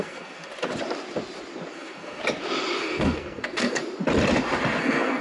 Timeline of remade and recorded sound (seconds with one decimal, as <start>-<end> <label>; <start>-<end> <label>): 0.0-0.5 remade; 0.5-1.7 recorded; 1.7-2.2 remade; 2.2-2.8 recorded; 2.8-3.8 remade; 3.8-4.8 recorded; 4.8-5.2 remade